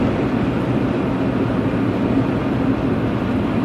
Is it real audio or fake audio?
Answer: real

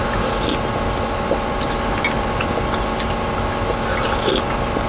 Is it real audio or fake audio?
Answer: real